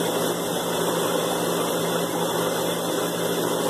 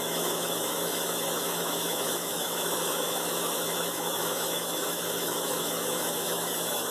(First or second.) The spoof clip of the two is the second